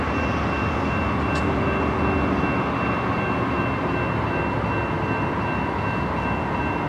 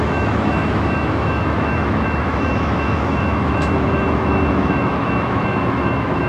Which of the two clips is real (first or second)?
first